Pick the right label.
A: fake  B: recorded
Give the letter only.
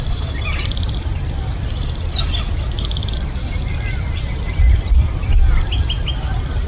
A